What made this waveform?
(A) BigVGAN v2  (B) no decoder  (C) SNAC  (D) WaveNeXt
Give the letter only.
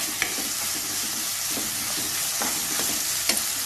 B